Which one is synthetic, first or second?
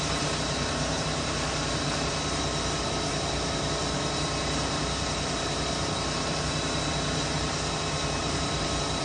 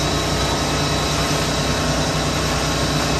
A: first